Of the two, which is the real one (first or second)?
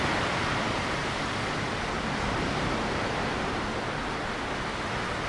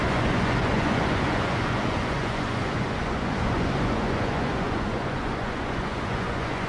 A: first